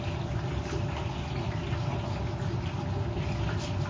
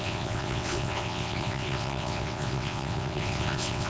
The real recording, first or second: first